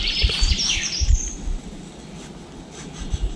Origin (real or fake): real